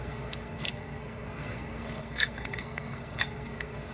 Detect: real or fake fake